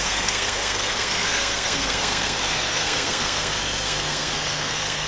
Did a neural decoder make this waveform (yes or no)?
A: yes